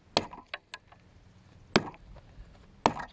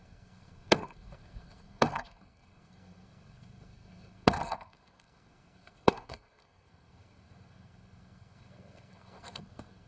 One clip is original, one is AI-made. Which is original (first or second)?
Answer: first